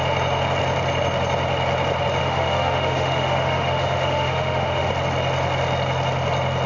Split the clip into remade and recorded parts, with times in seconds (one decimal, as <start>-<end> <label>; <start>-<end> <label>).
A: 0.0-2.2 recorded; 2.2-4.9 remade; 4.9-6.7 recorded